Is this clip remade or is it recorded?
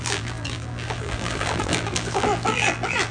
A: remade